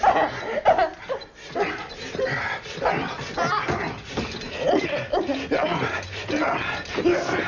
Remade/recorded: recorded